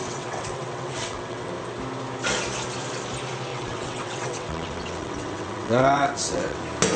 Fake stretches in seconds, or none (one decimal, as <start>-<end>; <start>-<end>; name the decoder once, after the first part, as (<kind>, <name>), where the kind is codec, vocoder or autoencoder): 0.0-1.5 (vocoder, WaveNeXt); 3.5-6.6